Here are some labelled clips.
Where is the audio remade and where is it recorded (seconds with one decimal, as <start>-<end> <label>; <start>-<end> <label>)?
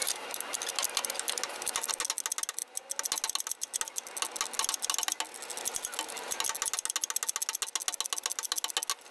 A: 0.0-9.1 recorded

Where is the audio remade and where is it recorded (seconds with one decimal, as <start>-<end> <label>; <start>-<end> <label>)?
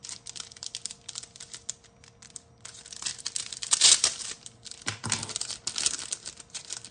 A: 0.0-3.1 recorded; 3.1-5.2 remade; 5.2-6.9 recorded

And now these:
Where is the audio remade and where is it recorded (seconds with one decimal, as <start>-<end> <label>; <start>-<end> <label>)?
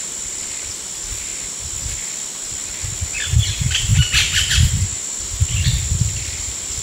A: 0.0-6.8 recorded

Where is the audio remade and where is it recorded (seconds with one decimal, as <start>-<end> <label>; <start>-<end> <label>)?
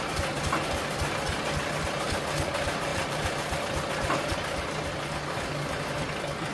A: 0.0-2.9 recorded; 2.9-3.6 remade; 3.6-6.5 recorded